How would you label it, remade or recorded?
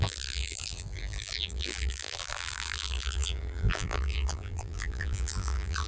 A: remade